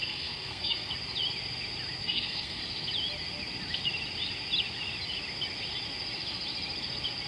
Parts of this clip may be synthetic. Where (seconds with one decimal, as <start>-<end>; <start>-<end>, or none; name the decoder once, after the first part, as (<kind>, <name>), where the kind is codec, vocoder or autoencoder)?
0.0-0.9 (codec, SNAC); 2.0-2.6